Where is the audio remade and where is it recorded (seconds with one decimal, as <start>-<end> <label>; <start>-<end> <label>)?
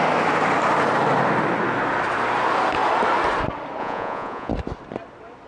0.0-3.8 recorded; 3.8-4.5 remade; 4.5-5.5 recorded